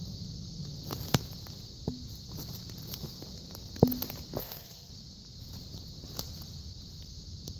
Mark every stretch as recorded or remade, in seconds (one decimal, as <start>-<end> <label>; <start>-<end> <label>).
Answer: 0.0-4.4 recorded; 4.4-4.9 remade; 4.9-7.6 recorded